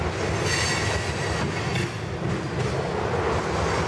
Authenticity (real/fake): real